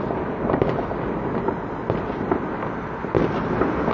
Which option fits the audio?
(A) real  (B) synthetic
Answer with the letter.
A